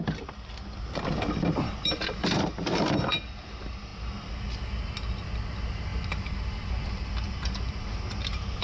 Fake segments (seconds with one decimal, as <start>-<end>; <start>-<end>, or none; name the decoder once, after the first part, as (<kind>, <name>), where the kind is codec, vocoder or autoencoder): 5.9-7.9 (vocoder, BigVGAN v2)